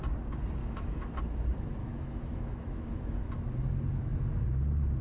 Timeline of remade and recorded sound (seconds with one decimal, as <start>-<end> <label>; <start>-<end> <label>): 0.0-0.6 recorded; 0.6-1.2 remade; 1.2-1.8 recorded; 1.8-3.3 remade; 3.3-5.0 recorded

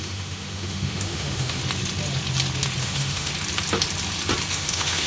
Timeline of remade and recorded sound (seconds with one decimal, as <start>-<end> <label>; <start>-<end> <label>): 0.0-1.6 remade; 1.6-2.8 recorded; 2.8-3.3 remade; 3.3-4.5 recorded; 4.5-5.1 remade

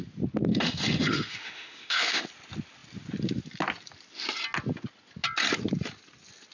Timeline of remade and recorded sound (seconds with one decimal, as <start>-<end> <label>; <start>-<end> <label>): 0.0-0.5 recorded; 0.5-2.2 remade; 2.2-6.5 recorded

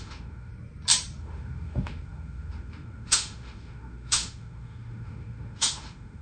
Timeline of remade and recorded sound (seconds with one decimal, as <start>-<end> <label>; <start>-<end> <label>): 0.0-0.5 remade; 0.5-1.2 recorded; 1.2-6.2 remade

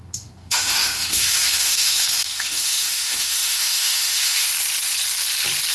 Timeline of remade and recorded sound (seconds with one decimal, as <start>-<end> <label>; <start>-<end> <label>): 0.0-4.5 remade; 4.5-5.7 recorded